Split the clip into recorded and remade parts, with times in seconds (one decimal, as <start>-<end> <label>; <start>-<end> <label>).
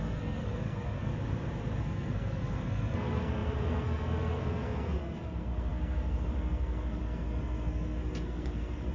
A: 0.0-1.1 remade; 1.1-1.8 recorded; 1.8-8.9 remade